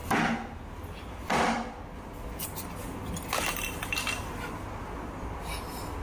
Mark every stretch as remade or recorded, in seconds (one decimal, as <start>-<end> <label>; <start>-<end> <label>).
0.0-6.0 recorded